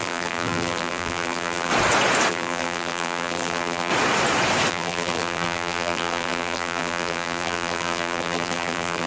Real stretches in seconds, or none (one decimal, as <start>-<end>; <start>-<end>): 1.7-2.3; 3.9-4.7